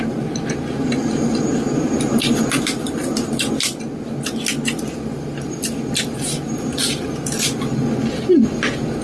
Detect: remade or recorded recorded